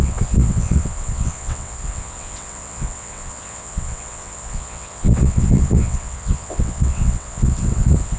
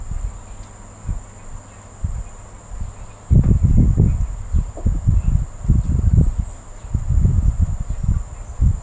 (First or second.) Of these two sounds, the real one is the second